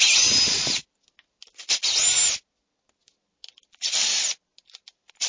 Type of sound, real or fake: real